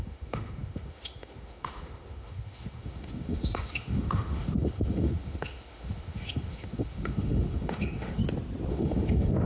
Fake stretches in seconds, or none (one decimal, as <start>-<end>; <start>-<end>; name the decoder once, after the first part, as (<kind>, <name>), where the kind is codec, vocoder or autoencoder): 0.0-8.2 (autoencoder, DAC-VAE); 8.7-9.5